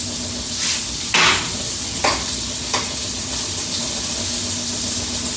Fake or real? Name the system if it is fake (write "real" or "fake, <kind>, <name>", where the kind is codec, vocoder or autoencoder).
real